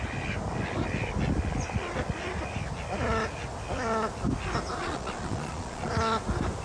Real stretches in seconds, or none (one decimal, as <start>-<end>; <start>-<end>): 0.0-4.8; 5.9-6.6